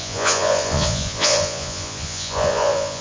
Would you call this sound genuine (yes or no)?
no